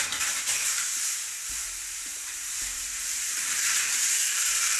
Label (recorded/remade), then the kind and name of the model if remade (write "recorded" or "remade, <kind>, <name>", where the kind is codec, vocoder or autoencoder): remade, vocoder, BigVGAN v2